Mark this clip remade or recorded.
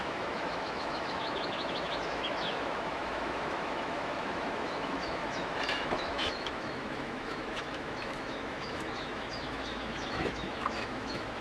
remade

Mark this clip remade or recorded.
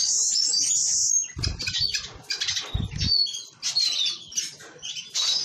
recorded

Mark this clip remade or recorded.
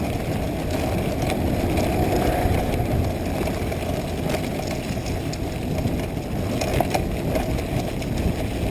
recorded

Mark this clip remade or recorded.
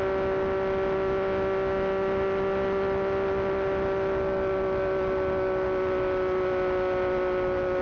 recorded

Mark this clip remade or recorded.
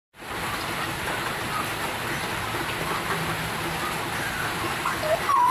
recorded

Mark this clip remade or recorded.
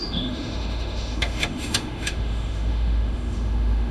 remade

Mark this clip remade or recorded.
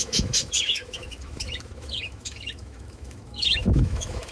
remade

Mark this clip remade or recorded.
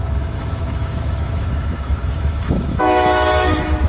remade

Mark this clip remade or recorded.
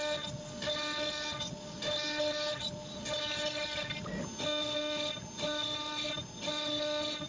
recorded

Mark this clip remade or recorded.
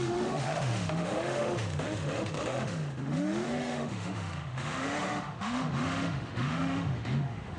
remade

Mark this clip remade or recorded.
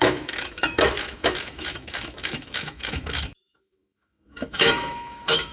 remade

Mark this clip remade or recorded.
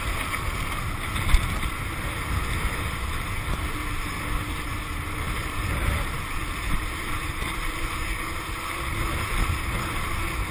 recorded